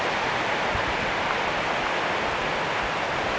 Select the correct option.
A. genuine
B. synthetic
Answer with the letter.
A